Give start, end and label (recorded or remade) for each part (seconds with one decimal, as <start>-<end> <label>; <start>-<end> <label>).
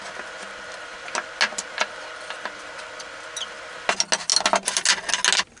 0.0-5.6 recorded